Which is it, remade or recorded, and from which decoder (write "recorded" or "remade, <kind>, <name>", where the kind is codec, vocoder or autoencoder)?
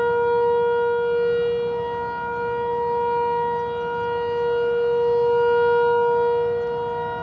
recorded